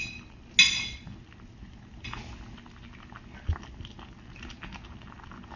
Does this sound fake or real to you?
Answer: real